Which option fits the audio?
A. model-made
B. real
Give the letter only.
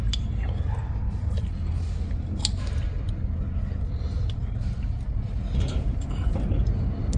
B